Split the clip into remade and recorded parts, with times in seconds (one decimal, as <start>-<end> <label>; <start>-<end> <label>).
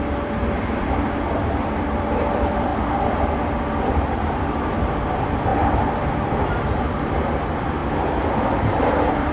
0.0-2.7 remade; 2.7-3.8 recorded; 3.8-7.8 remade; 7.8-8.9 recorded; 8.9-9.3 remade